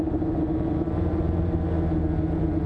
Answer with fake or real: real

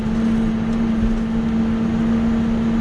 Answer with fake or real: real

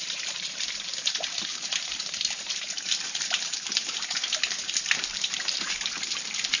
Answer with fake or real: fake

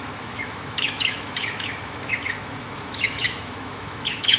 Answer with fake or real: fake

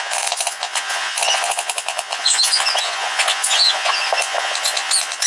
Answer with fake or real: fake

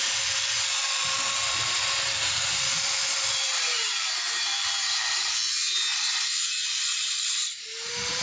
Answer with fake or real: fake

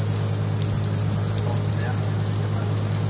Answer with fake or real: real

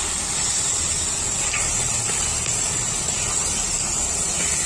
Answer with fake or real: real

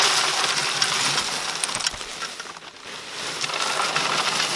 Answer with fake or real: real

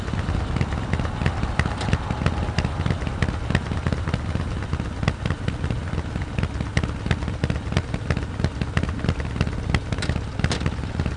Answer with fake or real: real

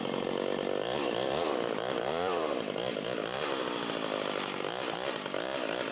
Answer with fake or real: real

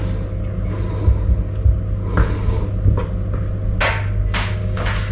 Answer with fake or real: real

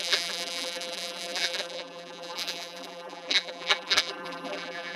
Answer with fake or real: fake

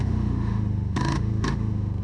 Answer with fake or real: fake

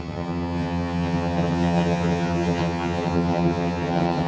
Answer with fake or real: fake